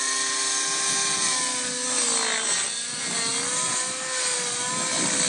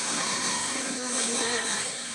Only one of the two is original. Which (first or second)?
first